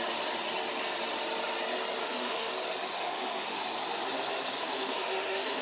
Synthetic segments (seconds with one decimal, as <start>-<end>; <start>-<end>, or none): 2.0-2.5; 2.9-3.6; 4.6-5.6